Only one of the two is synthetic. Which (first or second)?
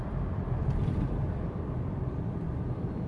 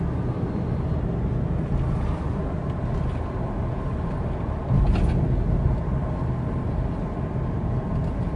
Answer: first